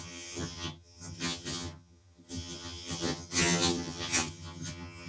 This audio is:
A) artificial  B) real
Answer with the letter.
A